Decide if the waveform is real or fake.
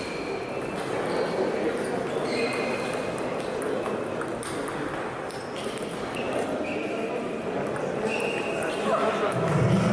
real